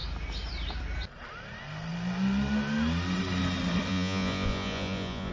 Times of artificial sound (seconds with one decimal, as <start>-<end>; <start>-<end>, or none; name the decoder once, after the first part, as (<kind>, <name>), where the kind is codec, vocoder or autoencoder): 3.9-5.3 (vocoder, Vocos)